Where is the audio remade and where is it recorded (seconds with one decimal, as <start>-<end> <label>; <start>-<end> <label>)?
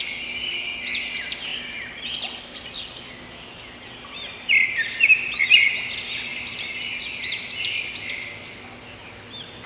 0.0-1.5 recorded; 1.5-3.1 remade; 3.1-9.7 recorded